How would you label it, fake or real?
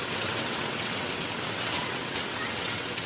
fake